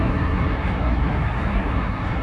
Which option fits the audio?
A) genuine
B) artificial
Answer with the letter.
B